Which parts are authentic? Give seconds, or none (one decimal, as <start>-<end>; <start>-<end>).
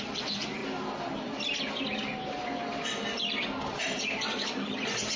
0.6-3.7